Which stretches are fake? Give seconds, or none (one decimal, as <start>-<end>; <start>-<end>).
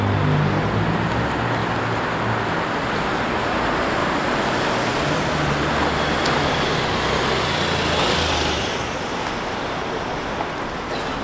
none